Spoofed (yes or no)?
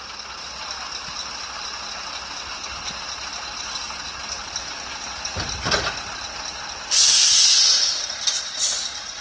no